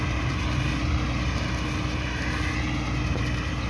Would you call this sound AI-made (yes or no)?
no